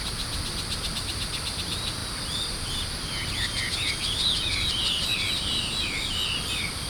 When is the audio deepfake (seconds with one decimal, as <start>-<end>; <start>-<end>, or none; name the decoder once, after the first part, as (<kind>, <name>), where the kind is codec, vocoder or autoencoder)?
0.0-6.9 (vocoder, BigVGAN v2)